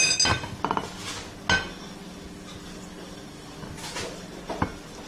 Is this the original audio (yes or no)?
yes